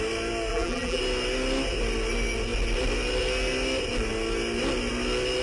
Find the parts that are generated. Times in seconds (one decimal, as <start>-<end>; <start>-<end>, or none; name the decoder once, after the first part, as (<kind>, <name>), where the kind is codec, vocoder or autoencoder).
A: 0.5-1.0 (vocoder, BigVGAN v2)